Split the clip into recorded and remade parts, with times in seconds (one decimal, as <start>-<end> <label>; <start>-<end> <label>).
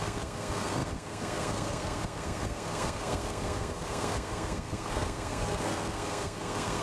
0.0-6.8 remade